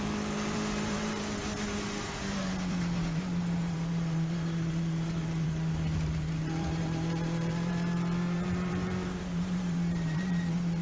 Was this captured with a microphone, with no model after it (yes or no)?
no